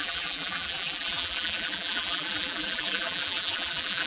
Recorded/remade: remade